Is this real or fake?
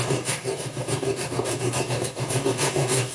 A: fake